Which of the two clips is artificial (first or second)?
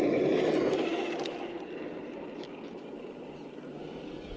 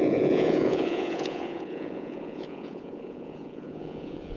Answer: second